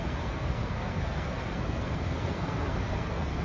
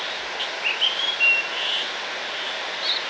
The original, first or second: second